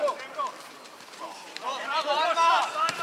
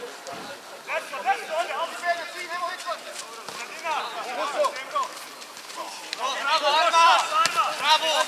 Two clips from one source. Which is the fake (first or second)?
first